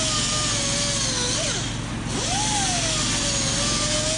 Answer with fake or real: real